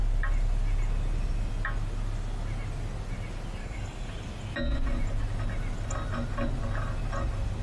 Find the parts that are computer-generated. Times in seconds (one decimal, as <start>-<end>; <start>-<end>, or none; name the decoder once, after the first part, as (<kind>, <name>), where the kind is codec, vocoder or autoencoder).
3.6-4.1 (codec, DAC)